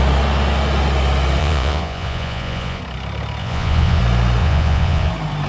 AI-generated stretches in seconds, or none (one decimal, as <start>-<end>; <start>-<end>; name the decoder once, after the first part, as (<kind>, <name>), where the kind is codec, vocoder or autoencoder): 1.4-2.8 (vocoder, Vocos); 3.4-4.0; 4.4-5.1